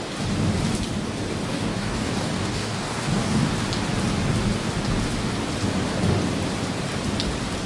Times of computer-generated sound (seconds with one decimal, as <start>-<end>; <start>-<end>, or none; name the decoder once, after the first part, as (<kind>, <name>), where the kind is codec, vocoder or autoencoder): 1.5-3.4 (codec, DAC)